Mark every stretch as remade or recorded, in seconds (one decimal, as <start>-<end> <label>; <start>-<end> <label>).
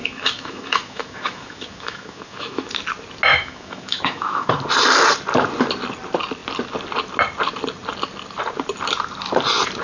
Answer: 0.0-2.7 remade; 2.7-3.3 recorded; 3.3-4.5 remade; 4.5-9.8 recorded